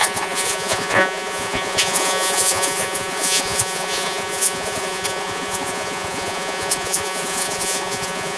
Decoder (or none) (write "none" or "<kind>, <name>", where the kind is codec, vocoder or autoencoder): vocoder, Vocos